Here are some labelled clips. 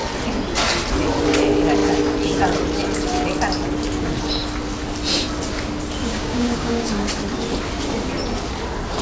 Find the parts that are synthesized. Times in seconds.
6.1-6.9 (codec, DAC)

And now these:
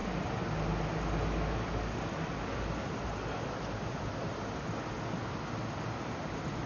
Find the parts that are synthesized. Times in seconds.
none

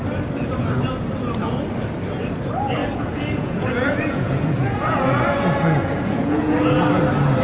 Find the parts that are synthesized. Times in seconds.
2.8-7.0 (vocoder, Vocos)